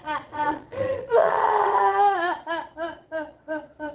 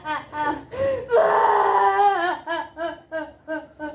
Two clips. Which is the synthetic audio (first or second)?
first